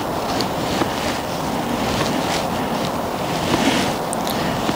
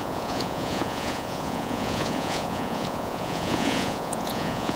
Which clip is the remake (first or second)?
second